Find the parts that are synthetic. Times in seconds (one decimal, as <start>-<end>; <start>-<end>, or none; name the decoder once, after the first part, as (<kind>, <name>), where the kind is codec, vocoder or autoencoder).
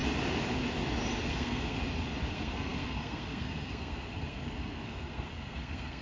1.3-1.8 (codec, SNAC); 2.3-6.0